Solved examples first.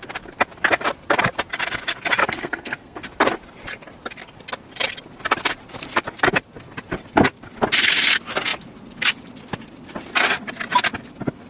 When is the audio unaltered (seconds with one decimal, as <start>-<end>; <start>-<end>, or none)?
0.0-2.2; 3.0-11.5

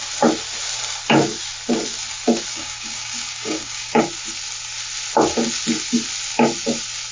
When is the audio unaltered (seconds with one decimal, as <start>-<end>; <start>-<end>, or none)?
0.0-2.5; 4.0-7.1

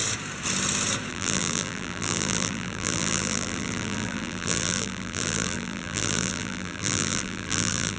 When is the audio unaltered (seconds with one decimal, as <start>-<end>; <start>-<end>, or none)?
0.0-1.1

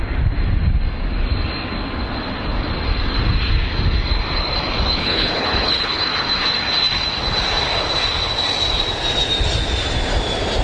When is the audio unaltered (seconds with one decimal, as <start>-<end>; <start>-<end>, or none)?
0.0-5.0; 6.0-10.6

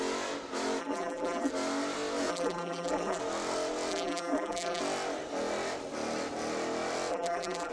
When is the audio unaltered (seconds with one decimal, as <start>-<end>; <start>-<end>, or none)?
0.0-0.8; 1.5-2.3; 3.2-3.9; 4.8-7.1